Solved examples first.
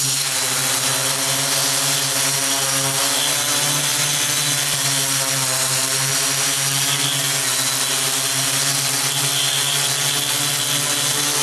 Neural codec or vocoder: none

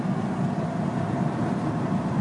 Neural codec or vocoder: none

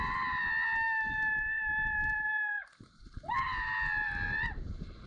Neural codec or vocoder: none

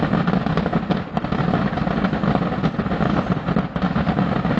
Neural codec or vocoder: none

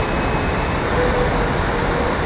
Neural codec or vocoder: none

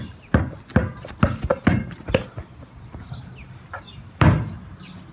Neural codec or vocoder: none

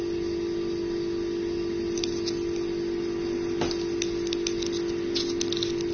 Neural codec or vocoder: none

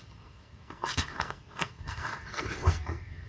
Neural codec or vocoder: codec, SNAC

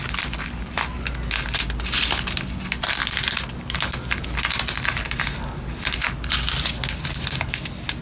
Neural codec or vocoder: none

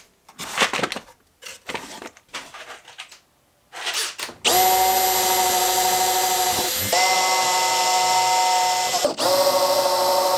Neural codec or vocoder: none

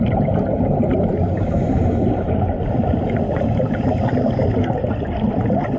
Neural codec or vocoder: none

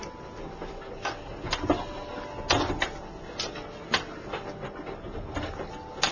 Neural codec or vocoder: none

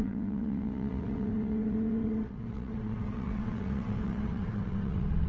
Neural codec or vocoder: vocoder, WaveNeXt